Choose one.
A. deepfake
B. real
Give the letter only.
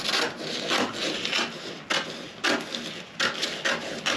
B